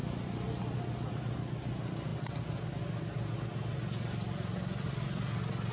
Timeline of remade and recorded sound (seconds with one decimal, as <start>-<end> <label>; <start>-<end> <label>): 0.0-5.7 recorded